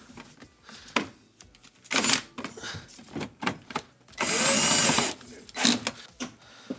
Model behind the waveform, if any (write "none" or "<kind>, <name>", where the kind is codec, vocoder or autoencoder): none